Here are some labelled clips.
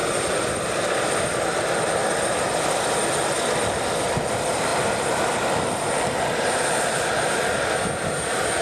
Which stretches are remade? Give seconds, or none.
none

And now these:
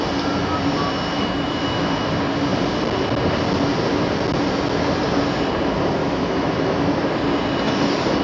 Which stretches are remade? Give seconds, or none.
1.1-2.1 (autoencoder, DAC-VAE); 6.0-7.0

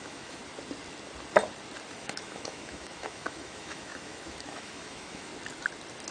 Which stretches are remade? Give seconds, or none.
0.0-0.4 (autoencoder, DAC-VAE); 1.9-5.3

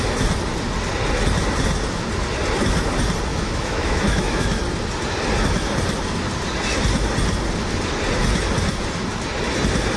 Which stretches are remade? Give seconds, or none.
3.3-4.6 (autoencoder, DAC-VAE)

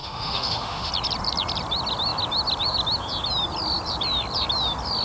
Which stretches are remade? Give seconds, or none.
0.0-0.9 (autoencoder, DAC-VAE)